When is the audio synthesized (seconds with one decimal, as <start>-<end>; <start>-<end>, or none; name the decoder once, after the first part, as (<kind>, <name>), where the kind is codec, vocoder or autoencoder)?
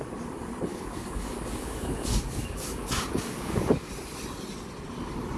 0.7-3.9 (codec, DAC)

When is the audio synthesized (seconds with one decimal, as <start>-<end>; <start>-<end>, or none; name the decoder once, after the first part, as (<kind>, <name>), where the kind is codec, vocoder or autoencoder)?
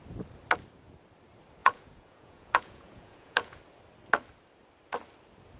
1.6-3.6 (vocoder, Vocos)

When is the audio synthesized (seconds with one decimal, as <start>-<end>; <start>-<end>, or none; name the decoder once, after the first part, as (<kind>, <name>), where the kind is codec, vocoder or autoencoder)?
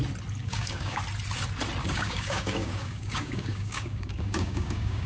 0.4-1.0 (codec, DAC); 1.8-5.1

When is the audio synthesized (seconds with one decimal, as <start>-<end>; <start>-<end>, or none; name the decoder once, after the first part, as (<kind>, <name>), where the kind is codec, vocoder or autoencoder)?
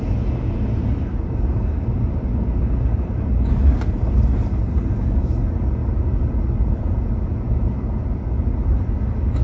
none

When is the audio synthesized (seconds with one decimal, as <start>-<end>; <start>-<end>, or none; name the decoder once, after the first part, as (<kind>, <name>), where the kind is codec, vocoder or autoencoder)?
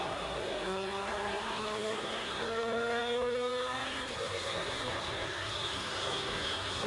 0.0-6.9 (codec, SNAC)